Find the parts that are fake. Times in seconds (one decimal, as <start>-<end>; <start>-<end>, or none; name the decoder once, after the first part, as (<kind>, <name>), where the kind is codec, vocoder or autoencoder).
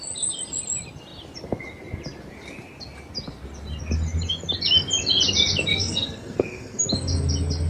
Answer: 5.7-6.8 (codec, SNAC)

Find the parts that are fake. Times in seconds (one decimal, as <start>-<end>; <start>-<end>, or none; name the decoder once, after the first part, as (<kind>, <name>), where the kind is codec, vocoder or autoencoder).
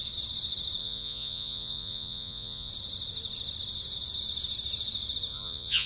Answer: 0.8-2.7 (vocoder, Vocos); 5.3-5.9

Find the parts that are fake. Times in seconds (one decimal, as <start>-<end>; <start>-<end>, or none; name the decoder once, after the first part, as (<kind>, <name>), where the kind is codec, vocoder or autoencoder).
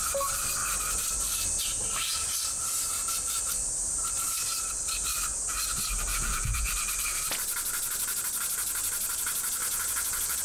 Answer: 6.1-6.7 (vocoder, Vocos); 9.6-10.4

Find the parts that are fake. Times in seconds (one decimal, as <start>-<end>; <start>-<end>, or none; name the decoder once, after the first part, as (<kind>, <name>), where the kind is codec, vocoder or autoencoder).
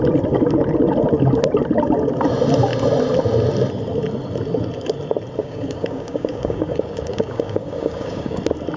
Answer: 5.4-8.4 (codec, DAC)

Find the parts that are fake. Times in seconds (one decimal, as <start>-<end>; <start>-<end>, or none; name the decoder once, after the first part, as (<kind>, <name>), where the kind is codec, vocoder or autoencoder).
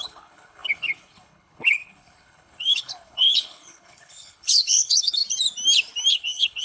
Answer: 0.0-5.2 (codec, HILCodec); 6.1-6.6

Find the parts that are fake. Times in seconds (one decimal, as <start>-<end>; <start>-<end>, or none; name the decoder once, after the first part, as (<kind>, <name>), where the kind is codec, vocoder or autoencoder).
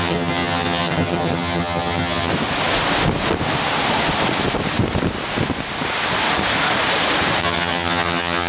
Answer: 0.0-2.3 (vocoder, HiFi-GAN); 7.4-8.5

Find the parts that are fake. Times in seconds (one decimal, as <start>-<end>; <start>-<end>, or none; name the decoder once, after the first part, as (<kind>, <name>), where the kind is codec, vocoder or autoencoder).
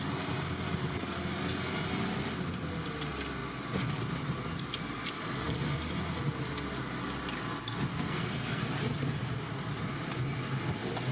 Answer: 7.9-8.6 (codec, SNAC)